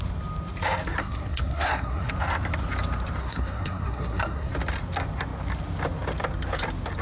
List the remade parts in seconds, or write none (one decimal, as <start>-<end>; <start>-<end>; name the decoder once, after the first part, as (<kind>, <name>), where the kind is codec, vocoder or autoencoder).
1.0-2.1 (codec, SNAC); 3.2-4.5